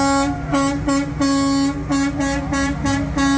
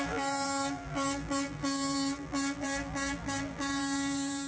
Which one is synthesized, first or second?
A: second